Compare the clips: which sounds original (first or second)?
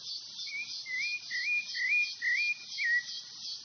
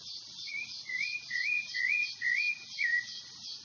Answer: first